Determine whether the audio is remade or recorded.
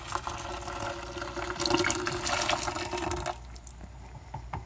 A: recorded